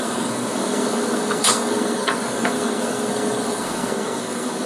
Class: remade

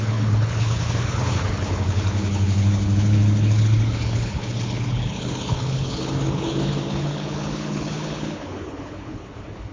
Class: remade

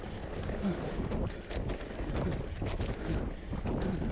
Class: recorded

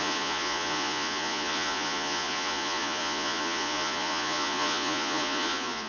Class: remade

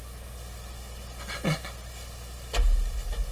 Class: recorded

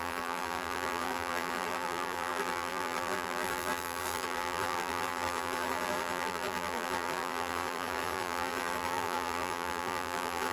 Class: remade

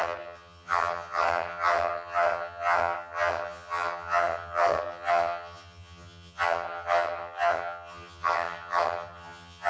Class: remade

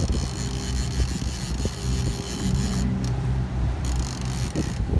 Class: recorded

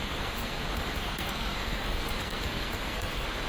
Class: remade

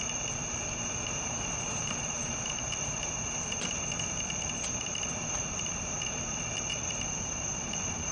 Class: remade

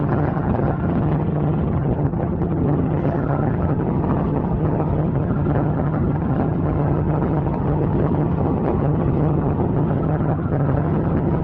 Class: remade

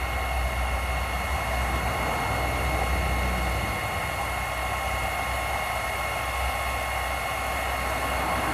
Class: recorded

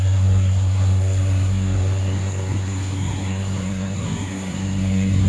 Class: remade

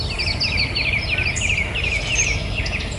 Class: recorded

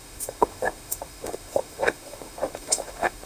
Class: remade